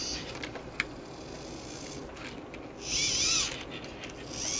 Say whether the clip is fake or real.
real